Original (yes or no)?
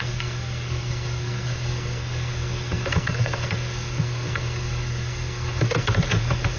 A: no